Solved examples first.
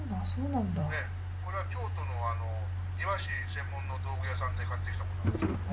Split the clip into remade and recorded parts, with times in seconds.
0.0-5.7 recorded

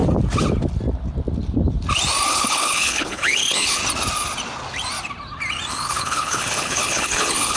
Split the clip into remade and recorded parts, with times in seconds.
0.0-2.3 recorded; 2.3-3.8 remade; 3.8-5.7 recorded; 5.7-7.6 remade

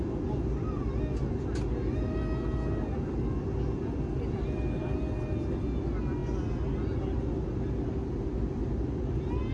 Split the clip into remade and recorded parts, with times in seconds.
0.0-9.5 recorded

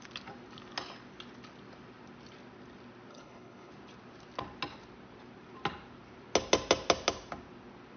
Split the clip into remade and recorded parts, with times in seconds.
0.0-3.1 recorded; 3.1-3.7 remade; 3.7-8.0 recorded

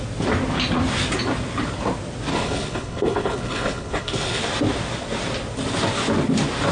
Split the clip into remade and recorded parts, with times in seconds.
0.0-2.3 recorded; 2.3-4.4 remade; 4.4-6.7 recorded